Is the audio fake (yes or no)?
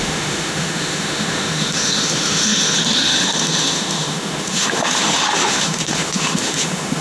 yes